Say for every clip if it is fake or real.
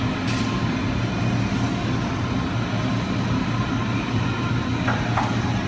real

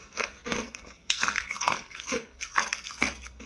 fake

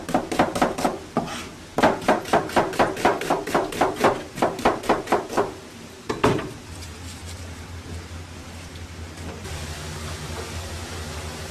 real